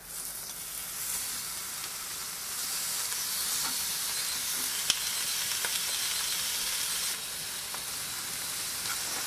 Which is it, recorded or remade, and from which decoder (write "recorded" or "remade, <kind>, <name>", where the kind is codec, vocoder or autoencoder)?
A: recorded